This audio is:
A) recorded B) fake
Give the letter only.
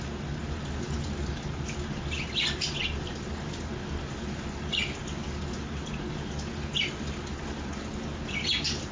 A